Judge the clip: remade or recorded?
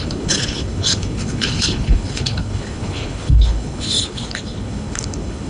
remade